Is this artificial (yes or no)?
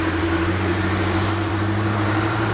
yes